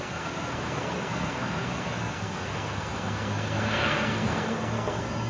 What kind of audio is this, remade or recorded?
remade